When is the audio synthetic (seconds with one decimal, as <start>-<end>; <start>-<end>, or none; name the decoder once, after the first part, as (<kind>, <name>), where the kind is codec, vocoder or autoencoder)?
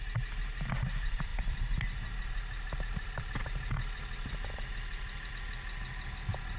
none